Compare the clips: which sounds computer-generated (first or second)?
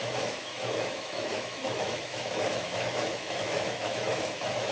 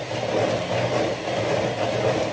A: first